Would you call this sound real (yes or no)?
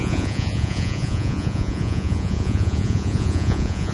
no